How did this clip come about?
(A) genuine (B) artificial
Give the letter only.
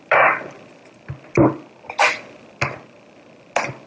A